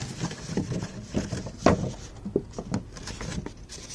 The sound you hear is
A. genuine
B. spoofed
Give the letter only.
A